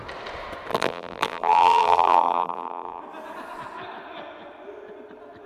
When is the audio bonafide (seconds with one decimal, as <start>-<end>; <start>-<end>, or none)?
0.0-0.7; 3.0-5.5